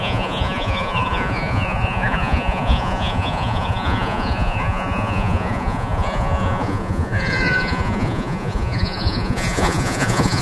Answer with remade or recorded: remade